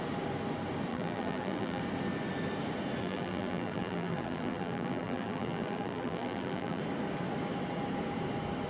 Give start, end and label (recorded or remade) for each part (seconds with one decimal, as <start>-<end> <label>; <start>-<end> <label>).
0.0-0.9 recorded; 0.9-1.8 remade; 1.8-3.0 recorded; 3.0-6.8 remade; 6.8-8.7 recorded